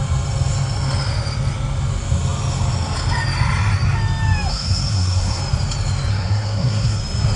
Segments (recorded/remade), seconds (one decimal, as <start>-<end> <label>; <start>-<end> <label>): 0.0-4.5 recorded; 4.5-5.4 remade; 5.4-6.1 recorded; 6.1-7.0 remade; 7.0-7.4 recorded